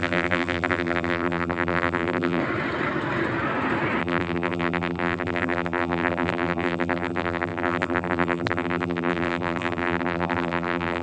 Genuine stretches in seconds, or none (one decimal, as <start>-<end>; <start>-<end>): 2.4-4.0